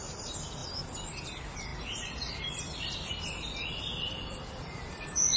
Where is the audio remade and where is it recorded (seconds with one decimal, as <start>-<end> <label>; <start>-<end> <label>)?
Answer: 0.0-0.6 remade; 0.6-1.1 recorded; 1.1-5.4 remade